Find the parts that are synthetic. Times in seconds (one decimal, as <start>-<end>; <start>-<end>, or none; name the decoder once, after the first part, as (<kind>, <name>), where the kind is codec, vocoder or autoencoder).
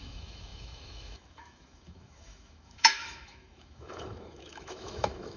0.0-5.4 (autoencoder, DAC-VAE)